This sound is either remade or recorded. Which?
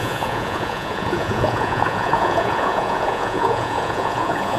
remade